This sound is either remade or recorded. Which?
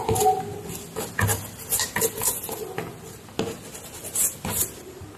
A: recorded